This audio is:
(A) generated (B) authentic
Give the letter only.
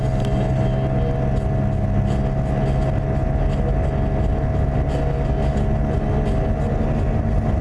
B